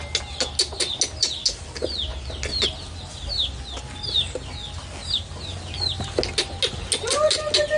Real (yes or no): yes